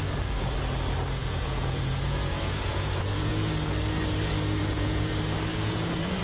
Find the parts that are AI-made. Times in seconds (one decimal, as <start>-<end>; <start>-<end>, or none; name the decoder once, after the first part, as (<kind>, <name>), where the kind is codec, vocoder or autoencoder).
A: 1.2-3.3 (vocoder, Vocos); 4.6-5.1; 5.5-6.2